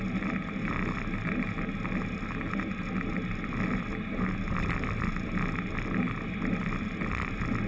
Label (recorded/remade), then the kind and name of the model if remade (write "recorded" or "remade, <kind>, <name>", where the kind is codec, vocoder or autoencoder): recorded